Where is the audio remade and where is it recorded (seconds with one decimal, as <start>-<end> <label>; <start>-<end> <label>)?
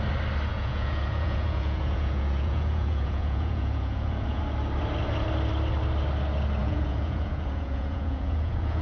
0.0-0.5 recorded; 0.5-4.4 remade; 4.4-6.6 recorded; 6.6-8.8 remade